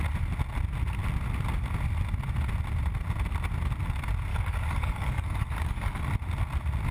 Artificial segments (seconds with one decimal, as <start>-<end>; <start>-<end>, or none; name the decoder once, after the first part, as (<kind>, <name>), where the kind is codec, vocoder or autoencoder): 4.3-6.0 (codec, DAC)

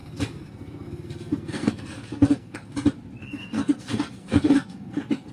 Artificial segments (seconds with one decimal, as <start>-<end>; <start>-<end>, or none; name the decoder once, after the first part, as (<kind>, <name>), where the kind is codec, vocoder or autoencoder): 0.0-2.7 (codec, SNAC); 3.2-5.3

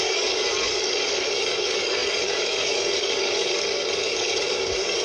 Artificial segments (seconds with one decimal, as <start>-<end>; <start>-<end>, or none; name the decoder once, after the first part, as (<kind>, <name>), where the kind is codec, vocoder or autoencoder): 0.0-5.0 (codec, DAC)

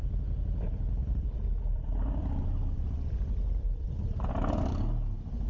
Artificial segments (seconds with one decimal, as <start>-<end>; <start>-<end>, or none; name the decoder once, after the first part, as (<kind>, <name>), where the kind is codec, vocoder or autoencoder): 1.0-4.3 (vocoder, BigVGAN v2)

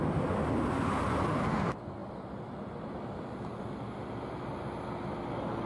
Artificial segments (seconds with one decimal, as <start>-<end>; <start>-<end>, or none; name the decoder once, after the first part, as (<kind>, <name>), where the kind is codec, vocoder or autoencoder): none

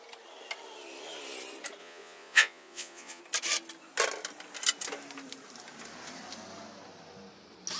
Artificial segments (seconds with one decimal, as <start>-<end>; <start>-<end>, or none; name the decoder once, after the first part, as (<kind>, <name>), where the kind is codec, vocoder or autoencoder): 1.8-3.2 (vocoder, Vocos)